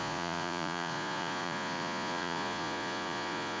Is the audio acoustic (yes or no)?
no